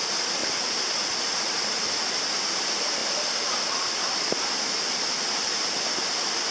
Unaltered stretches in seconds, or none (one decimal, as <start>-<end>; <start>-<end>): 0.0-6.5